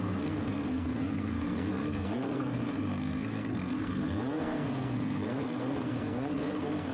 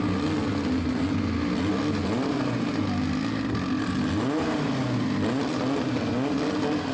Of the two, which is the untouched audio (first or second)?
second